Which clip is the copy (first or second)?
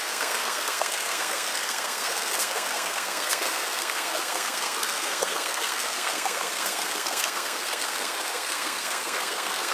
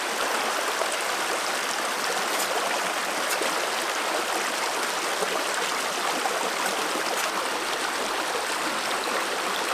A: first